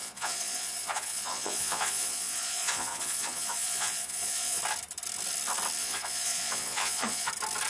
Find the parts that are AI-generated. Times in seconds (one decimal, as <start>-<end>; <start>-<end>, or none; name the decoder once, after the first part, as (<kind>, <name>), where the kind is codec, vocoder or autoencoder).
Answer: 0.0-4.6 (vocoder, Vocos); 5.8-7.3